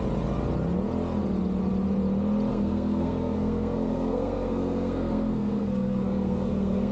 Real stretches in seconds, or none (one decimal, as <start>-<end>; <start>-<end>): 0.0-2.5